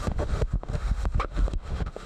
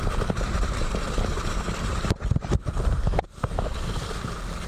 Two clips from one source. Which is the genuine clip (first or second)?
second